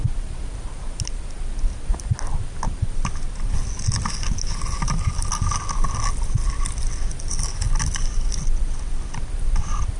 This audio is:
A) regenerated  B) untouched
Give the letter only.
B